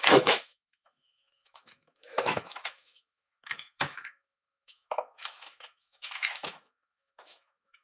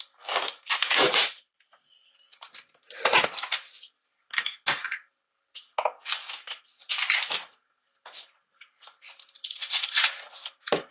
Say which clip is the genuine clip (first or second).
second